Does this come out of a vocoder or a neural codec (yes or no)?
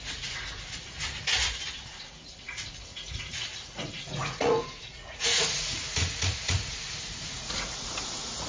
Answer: yes